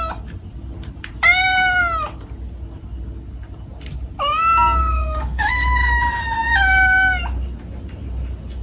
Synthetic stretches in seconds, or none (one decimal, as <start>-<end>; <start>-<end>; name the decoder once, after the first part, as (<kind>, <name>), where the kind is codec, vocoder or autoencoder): 4.8-5.5 (autoencoder, DAC-VAE)